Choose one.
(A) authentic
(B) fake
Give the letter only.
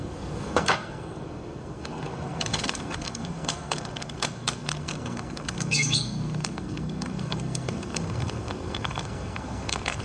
B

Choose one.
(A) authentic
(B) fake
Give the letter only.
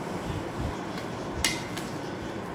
A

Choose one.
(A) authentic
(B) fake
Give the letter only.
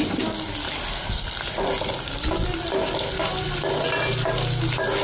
A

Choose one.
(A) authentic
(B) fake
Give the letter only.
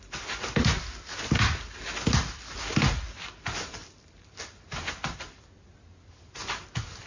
A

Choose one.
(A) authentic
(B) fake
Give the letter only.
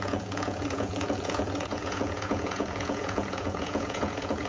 B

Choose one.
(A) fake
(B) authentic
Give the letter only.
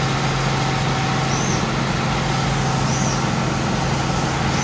B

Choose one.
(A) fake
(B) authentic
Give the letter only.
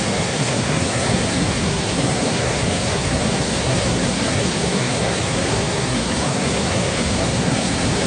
A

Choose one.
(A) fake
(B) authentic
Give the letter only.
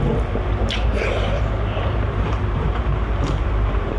A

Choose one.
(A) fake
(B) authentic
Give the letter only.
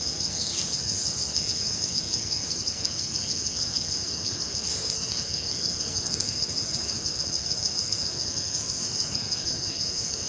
A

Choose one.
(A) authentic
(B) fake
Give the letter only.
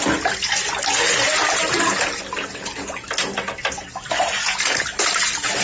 A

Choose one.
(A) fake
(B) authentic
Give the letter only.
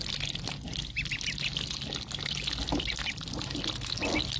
B